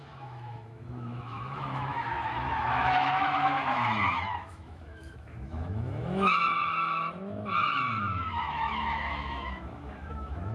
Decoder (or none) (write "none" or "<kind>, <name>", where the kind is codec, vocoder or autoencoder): autoencoder, DAC-VAE